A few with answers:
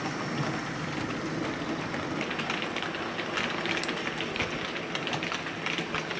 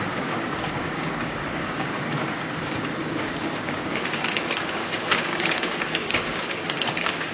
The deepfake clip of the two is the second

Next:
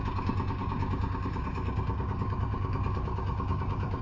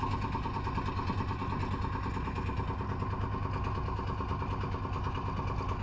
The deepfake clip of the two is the first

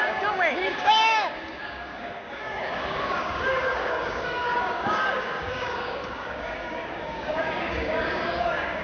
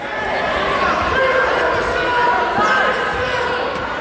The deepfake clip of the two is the first